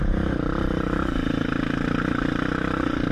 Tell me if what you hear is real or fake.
fake